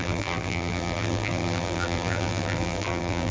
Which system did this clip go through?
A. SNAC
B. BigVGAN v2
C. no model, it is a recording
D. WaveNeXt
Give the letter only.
B